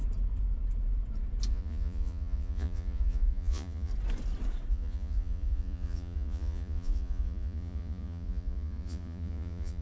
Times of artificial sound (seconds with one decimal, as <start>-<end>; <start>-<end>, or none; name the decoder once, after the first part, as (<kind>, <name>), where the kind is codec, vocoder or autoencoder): 1.5-3.9 (vocoder, Vocos); 4.7-9.8

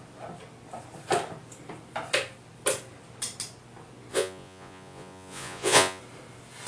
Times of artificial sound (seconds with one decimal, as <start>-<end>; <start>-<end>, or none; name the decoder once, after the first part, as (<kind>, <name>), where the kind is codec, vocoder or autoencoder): 4.1-6.0 (vocoder, Vocos)

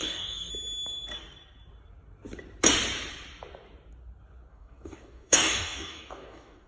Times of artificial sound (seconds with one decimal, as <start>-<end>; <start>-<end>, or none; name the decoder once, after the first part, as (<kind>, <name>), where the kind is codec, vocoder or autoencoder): 0.0-0.5 (codec, DAC); 4.5-6.7

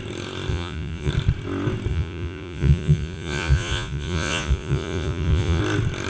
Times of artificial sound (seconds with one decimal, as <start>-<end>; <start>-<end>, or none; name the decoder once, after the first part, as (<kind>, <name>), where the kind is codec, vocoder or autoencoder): 0.5-1.1 (vocoder, Vocos); 1.9-5.6

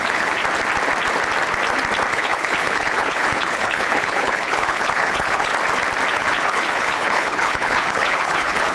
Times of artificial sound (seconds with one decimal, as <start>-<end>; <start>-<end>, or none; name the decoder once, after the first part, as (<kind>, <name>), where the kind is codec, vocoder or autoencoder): 0.0-0.4 (codec, HILCodec); 2.1-5.5; 6.1-8.7